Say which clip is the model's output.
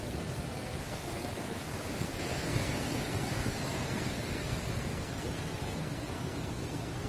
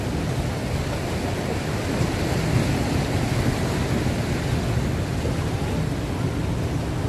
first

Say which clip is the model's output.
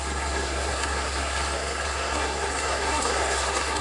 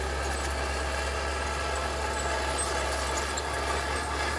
first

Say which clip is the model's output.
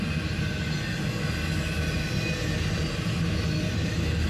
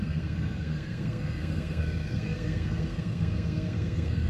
second